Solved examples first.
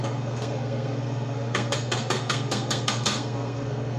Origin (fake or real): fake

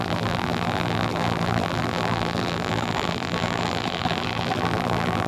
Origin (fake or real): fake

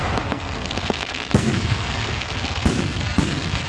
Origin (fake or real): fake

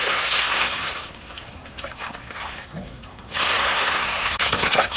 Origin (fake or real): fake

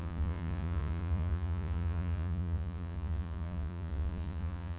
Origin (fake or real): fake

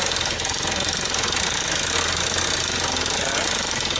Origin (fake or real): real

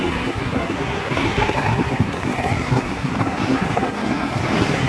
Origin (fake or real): fake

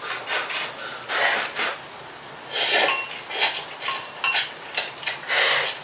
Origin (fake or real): real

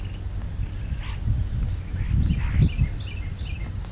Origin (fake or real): real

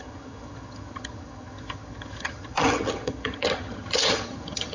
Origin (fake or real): fake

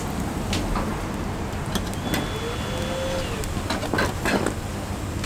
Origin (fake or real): real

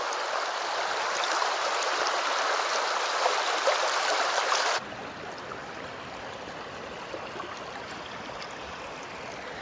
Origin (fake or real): real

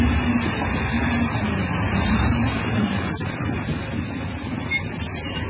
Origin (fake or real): real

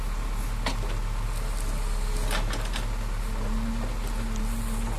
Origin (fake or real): real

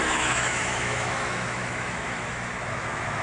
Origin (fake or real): fake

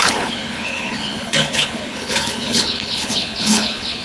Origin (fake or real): fake